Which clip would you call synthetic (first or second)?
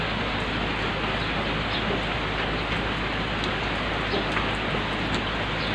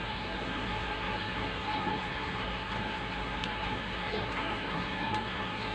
second